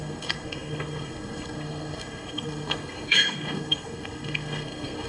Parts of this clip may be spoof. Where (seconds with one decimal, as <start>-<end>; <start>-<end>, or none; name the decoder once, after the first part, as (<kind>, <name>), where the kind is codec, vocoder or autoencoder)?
0.0-5.1 (codec, SNAC)